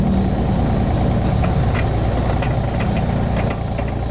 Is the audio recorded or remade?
recorded